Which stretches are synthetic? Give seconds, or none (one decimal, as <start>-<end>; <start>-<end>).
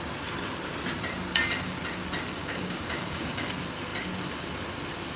2.4-3.5